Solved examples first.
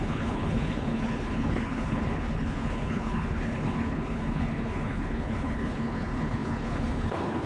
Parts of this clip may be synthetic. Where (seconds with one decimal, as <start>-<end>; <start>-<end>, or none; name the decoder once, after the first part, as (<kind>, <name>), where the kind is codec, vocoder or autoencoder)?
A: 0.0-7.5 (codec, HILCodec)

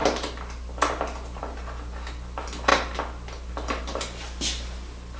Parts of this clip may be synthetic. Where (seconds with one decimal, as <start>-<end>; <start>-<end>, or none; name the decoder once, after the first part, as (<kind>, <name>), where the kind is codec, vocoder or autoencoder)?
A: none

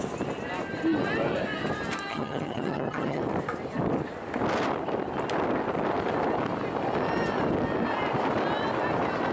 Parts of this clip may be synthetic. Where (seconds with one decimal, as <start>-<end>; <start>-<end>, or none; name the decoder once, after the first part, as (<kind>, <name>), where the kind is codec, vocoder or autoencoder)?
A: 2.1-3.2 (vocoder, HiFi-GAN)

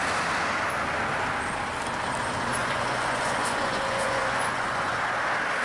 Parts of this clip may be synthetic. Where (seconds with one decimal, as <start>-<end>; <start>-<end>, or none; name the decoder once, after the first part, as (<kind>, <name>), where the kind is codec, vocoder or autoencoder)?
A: 2.6-5.0 (vocoder, Vocos)

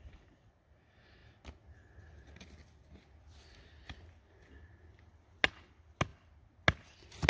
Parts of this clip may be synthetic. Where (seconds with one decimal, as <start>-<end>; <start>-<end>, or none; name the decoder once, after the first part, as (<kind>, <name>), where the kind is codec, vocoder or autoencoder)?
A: none

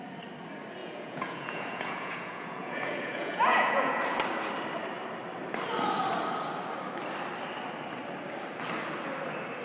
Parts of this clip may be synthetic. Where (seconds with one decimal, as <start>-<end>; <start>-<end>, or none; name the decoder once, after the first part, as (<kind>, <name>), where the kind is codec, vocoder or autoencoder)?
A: 0.8-4.0 (vocoder, Vocos)

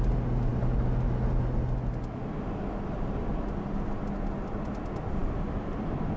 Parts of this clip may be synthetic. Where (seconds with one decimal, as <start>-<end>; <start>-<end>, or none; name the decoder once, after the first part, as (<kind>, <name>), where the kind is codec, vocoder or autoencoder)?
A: none

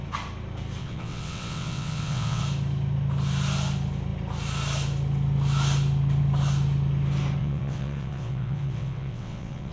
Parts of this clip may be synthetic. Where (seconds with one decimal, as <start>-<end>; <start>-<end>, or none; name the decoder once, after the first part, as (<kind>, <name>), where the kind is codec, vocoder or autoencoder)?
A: 0.8-2.4 (vocoder, WaveNeXt); 7.4-9.7